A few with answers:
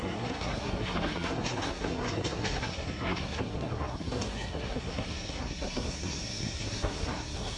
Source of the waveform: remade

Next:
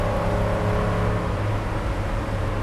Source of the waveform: recorded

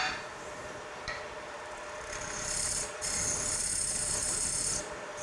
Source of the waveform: remade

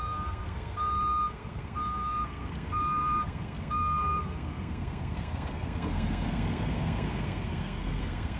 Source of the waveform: remade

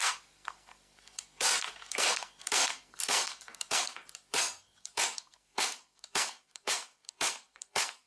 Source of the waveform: remade